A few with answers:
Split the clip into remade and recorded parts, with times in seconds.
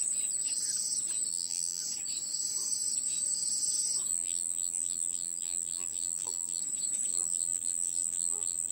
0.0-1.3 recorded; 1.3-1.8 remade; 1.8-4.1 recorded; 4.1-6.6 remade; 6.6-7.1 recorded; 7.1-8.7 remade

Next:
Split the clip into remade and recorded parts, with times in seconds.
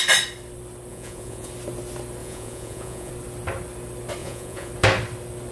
0.0-0.9 recorded; 0.9-1.5 remade; 1.5-2.2 recorded; 2.2-3.1 remade; 3.1-4.2 recorded; 4.2-4.7 remade; 4.7-5.5 recorded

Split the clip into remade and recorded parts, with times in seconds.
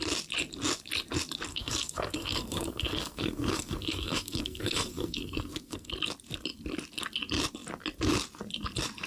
0.0-1.5 recorded; 1.5-5.9 remade; 5.9-9.1 recorded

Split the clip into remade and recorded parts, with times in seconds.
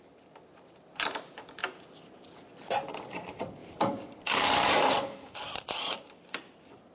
0.0-3.6 recorded; 3.6-4.4 remade; 4.4-6.9 recorded